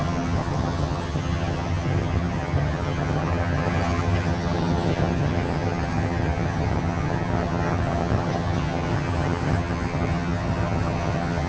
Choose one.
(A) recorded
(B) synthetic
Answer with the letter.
B